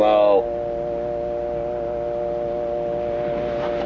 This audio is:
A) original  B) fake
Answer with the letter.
A